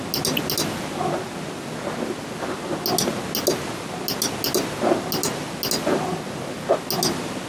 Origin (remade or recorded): recorded